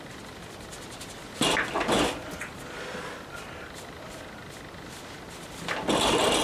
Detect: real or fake real